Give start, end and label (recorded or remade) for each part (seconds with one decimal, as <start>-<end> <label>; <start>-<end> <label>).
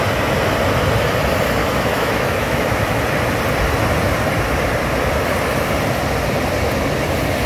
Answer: 0.0-1.6 recorded; 1.6-3.0 remade; 3.0-7.5 recorded